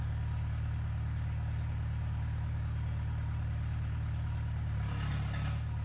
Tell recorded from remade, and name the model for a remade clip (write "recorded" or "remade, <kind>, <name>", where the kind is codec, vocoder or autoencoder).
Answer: recorded